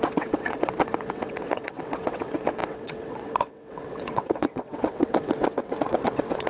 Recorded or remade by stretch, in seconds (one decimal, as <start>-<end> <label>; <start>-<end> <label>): 0.0-6.5 remade